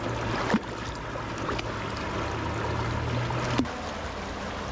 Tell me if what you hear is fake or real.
real